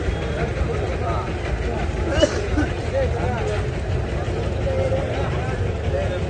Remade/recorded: recorded